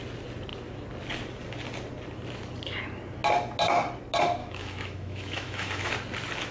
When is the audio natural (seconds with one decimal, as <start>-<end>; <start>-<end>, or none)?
0.0-4.4; 5.9-6.5